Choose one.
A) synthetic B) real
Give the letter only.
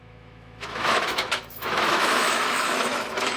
A